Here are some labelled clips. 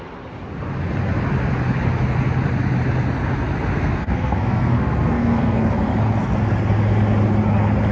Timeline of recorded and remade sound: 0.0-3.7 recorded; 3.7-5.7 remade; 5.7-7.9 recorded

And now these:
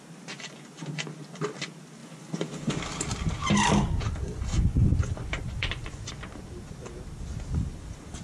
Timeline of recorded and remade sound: 0.0-2.0 recorded; 2.0-2.8 remade; 2.8-4.5 recorded; 4.5-6.1 remade; 6.1-8.2 recorded

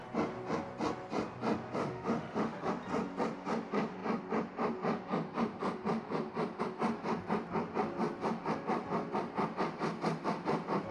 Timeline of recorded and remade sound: 0.0-1.8 recorded; 1.8-2.7 remade; 2.7-10.9 recorded

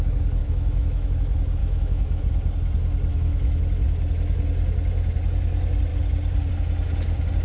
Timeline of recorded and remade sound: 0.0-0.4 recorded; 0.4-1.1 remade; 1.1-1.6 recorded; 1.6-2.2 remade; 2.2-3.1 recorded; 3.1-3.6 remade; 3.6-7.4 recorded

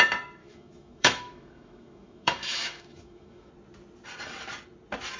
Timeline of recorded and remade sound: 0.0-0.4 recorded; 0.4-3.5 remade; 3.5-5.2 recorded

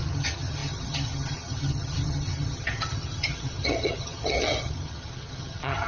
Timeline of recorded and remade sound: 0.0-5.9 remade